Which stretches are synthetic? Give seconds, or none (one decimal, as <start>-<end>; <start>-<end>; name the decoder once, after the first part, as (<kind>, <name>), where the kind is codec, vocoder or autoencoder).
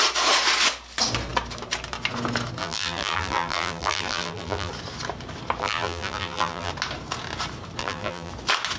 2.6-4.7 (vocoder, BigVGAN v2); 5.6-6.7; 7.8-8.3